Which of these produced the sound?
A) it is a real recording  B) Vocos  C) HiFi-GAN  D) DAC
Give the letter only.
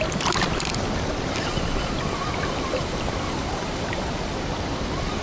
A